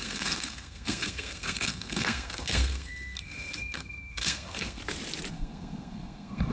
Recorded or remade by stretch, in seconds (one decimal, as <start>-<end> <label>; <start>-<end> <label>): 0.0-4.8 remade; 4.8-5.3 recorded; 5.3-6.5 remade